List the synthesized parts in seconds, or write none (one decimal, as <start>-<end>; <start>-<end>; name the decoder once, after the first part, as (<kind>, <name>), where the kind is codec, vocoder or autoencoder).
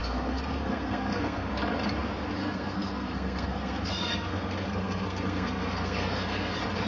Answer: 0.0-1.5 (codec, SNAC); 2.4-6.5